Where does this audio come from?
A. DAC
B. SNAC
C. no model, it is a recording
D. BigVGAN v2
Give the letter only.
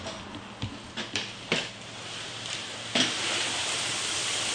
C